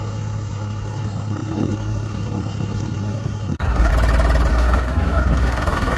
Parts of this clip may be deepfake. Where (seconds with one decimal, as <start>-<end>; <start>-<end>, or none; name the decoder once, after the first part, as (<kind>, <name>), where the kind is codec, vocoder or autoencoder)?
0.0-3.9 (codec, SNAC); 4.5-6.0